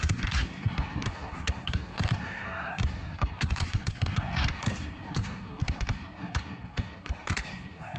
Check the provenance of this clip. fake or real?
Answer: fake